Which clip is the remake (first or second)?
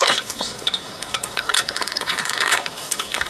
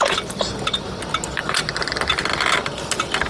first